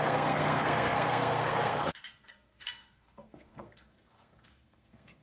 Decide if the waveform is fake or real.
fake